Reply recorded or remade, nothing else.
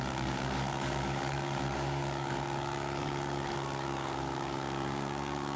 remade